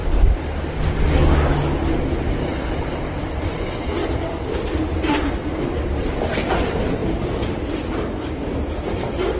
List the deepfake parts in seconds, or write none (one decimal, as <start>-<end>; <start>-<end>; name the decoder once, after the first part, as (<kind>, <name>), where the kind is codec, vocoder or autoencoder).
none